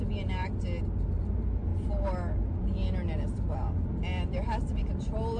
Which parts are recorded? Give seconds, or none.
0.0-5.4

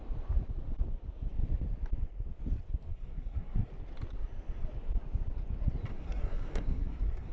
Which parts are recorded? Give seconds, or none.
0.0-2.9; 3.7-5.9

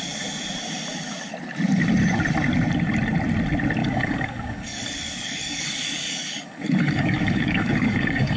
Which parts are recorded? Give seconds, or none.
0.0-3.8

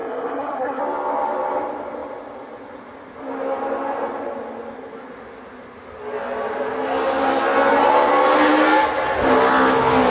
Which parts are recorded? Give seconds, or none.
0.8-10.1

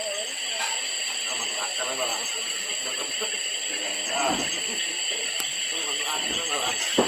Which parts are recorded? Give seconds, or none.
0.0-2.1; 2.7-3.6

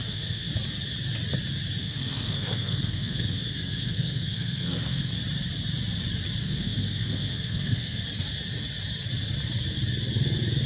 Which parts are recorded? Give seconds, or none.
0.5-1.8; 5.1-6.4; 8.0-10.7